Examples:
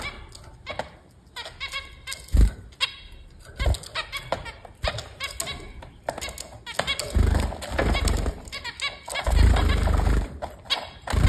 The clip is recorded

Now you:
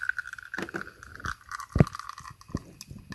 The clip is recorded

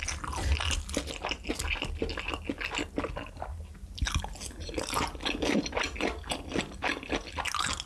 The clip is recorded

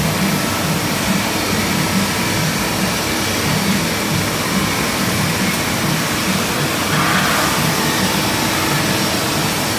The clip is recorded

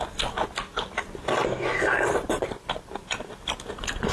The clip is recorded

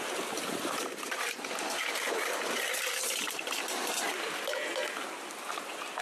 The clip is recorded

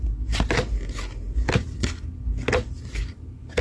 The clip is recorded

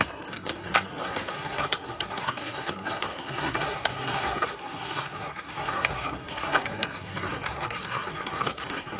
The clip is remade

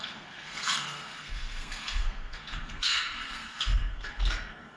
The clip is remade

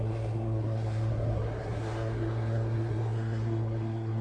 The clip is remade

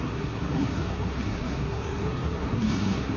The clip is remade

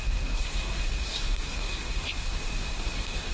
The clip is remade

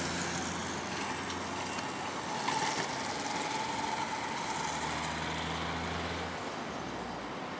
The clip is recorded